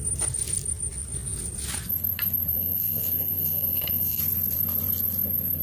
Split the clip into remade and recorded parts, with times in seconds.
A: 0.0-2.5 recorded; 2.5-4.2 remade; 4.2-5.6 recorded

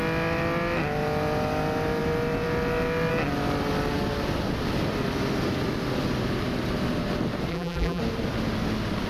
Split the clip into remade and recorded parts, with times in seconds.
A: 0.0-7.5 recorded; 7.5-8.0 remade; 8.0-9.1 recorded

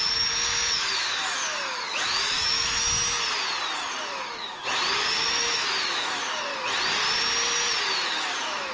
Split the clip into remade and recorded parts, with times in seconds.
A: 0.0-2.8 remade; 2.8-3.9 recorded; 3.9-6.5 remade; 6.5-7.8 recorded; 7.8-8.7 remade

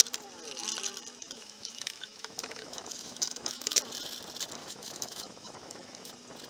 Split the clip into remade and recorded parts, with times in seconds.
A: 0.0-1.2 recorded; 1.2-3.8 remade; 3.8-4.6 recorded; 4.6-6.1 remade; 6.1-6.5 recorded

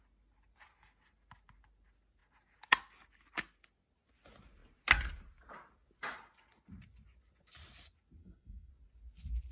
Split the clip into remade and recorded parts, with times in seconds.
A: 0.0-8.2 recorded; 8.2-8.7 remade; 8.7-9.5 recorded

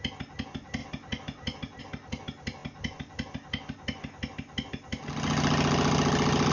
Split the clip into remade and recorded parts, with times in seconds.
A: 0.0-6.5 recorded